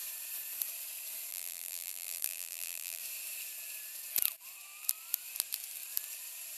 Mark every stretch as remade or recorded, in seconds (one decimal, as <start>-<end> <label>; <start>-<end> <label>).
0.0-1.3 recorded; 1.3-3.0 remade; 3.0-6.6 recorded